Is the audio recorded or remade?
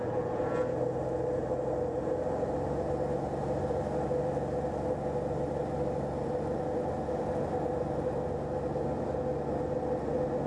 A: recorded